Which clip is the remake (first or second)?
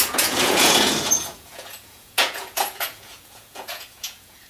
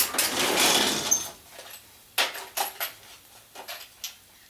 first